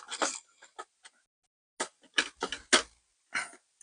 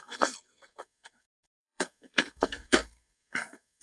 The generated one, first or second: second